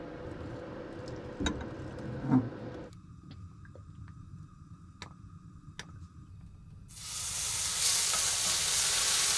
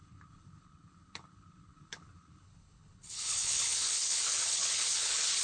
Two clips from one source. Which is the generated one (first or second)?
second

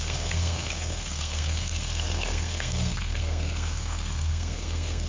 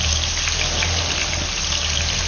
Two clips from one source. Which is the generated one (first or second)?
first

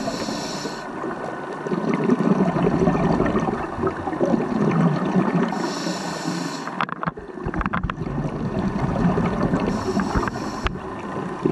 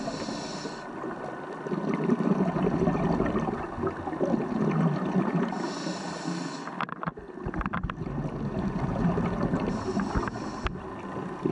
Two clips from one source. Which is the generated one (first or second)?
first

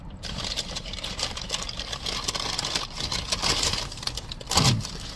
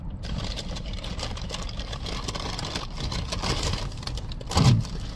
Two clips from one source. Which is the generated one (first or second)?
second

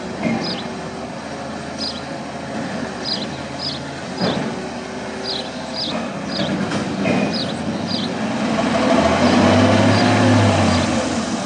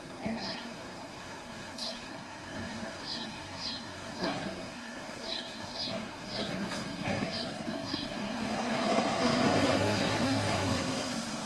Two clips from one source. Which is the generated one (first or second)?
second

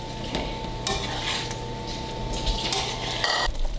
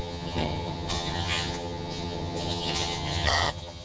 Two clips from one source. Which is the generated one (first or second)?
second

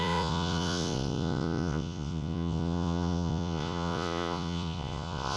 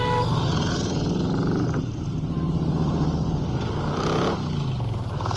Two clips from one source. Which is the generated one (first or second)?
first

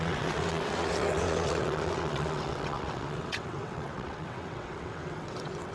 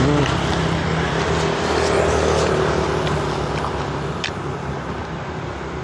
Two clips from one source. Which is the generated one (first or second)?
first